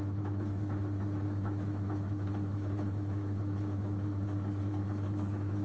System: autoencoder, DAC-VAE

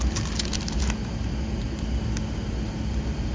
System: none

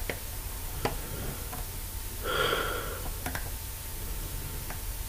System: none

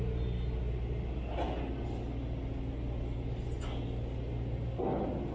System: none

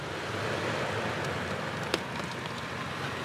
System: none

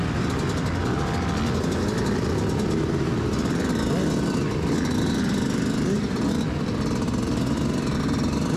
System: none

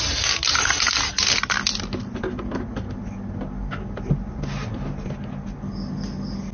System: none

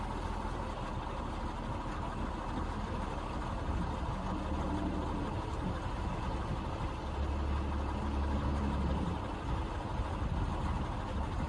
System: none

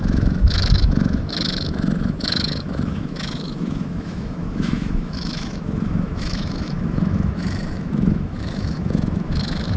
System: autoencoder, DAC-VAE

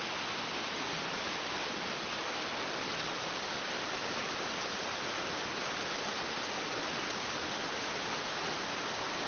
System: none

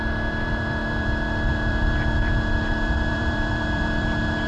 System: vocoder, BigVGAN v2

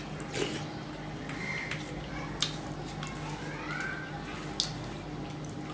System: none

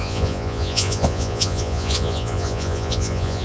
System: vocoder, Vocos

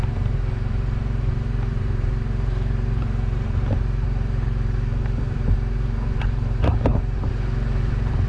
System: vocoder, BigVGAN v2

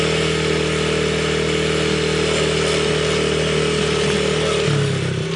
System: none